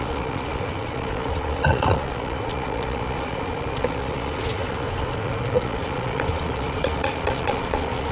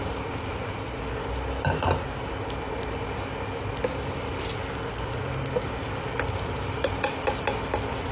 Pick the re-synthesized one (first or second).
first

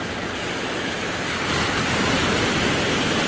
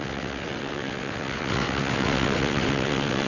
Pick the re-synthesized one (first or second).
second